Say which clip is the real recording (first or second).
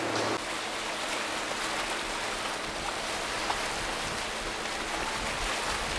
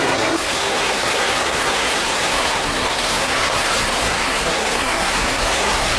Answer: first